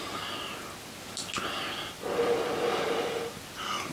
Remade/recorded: recorded